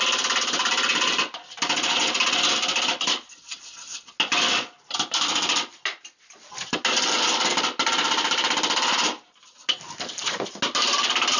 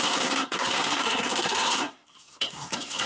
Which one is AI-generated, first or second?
second